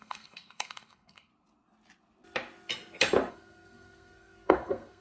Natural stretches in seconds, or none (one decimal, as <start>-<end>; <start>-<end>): 1.3-3.3